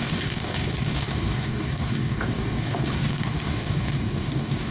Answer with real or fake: fake